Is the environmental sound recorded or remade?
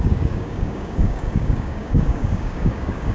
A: remade